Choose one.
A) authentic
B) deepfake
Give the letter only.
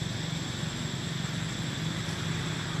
A